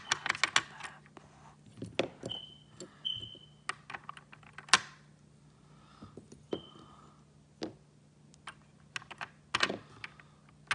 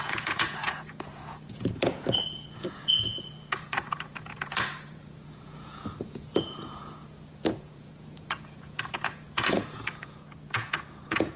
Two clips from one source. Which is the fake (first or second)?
second